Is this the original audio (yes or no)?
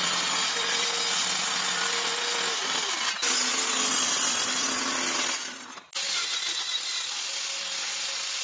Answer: yes